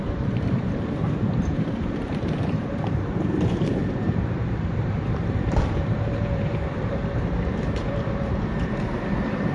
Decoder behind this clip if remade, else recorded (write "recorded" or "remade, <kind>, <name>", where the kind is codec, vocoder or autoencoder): remade, vocoder, BigVGAN v2